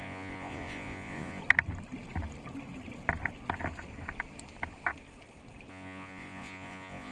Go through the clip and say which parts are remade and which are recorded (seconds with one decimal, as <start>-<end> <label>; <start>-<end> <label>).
0.0-1.4 remade; 1.4-5.7 recorded; 5.7-7.1 remade

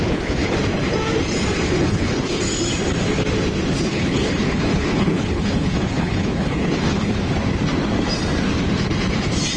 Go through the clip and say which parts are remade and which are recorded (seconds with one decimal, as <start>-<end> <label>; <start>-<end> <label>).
0.0-0.5 remade; 0.5-1.8 recorded; 1.8-2.4 remade; 2.4-3.7 recorded; 3.7-7.1 remade; 7.1-9.6 recorded

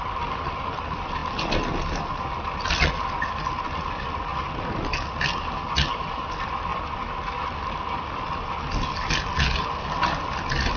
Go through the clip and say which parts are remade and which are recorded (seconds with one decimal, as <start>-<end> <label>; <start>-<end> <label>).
0.0-10.8 recorded

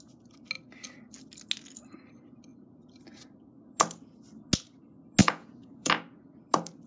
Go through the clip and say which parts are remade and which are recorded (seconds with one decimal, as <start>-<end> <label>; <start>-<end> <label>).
0.0-5.2 recorded; 5.2-5.9 remade; 5.9-6.9 recorded

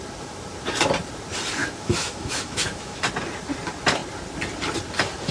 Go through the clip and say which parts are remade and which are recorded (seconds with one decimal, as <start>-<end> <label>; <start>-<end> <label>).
0.0-1.6 recorded; 1.6-3.0 remade; 3.0-5.3 recorded

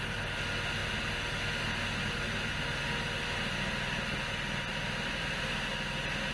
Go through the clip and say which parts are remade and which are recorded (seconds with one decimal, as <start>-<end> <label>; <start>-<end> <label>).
0.0-6.3 recorded

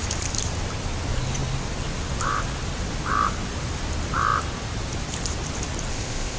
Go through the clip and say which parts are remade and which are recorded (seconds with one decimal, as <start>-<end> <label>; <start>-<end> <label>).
0.0-5.9 recorded; 5.9-6.4 remade

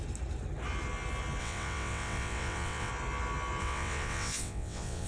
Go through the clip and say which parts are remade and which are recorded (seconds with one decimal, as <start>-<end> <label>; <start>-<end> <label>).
0.0-1.4 recorded; 1.4-2.9 remade; 2.9-3.6 recorded; 3.6-5.1 remade